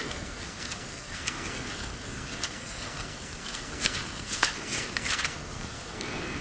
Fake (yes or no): yes